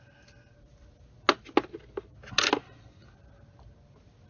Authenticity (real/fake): real